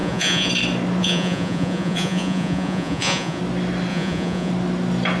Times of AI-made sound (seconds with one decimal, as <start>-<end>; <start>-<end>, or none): 0.0-0.5; 1.0-3.4; 3.9-4.5